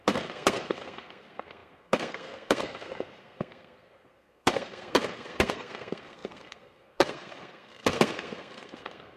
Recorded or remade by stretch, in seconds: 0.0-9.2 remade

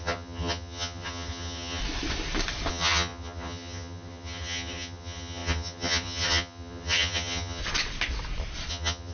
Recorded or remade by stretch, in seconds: 0.0-1.8 remade; 1.8-2.7 recorded; 2.7-7.6 remade; 7.6-8.7 recorded; 8.7-9.1 remade